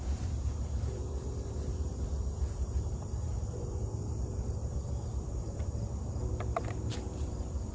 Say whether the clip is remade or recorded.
remade